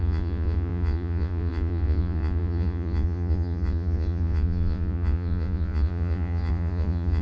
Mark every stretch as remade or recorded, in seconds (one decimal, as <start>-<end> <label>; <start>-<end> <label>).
0.0-7.2 remade